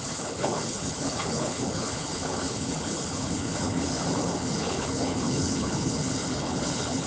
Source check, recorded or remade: remade